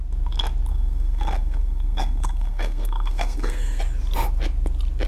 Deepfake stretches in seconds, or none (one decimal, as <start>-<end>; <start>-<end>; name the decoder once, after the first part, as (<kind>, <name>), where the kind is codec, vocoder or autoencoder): 0.7-3.8 (codec, SNAC)